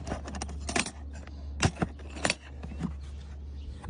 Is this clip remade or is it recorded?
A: recorded